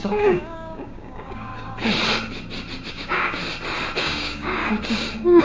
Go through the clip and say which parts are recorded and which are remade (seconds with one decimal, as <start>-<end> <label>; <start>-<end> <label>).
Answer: 0.0-1.5 remade; 1.5-2.9 recorded; 2.9-3.4 remade; 3.4-4.0 recorded; 4.0-4.6 remade; 4.6-5.4 recorded